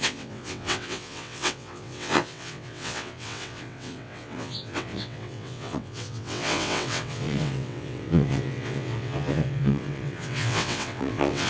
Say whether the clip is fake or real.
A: fake